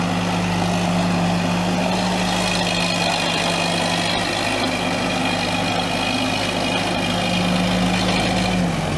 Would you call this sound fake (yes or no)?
no